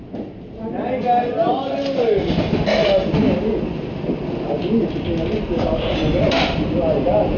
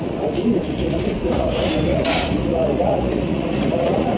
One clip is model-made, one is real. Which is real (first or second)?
first